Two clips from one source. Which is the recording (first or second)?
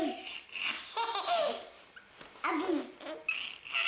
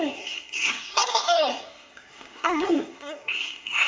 first